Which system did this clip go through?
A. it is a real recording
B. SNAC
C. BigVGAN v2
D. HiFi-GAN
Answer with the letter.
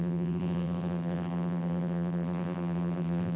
C